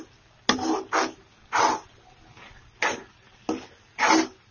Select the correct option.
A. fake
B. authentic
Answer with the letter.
B